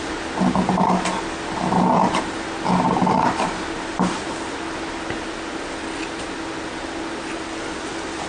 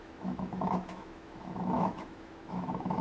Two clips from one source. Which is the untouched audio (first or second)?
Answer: first